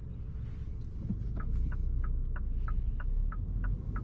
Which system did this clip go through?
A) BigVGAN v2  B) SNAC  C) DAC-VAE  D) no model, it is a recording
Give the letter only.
D